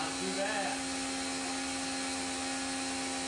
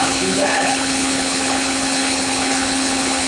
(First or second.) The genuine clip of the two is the first